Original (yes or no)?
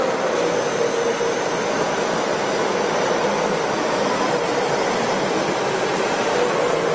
yes